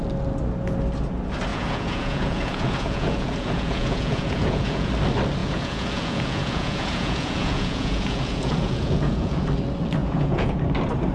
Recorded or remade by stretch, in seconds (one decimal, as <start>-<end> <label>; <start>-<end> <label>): 0.0-1.5 recorded; 1.5-4.9 remade; 4.9-5.4 recorded; 5.4-9.4 remade; 9.4-10.0 recorded; 10.0-10.6 remade; 10.6-11.1 recorded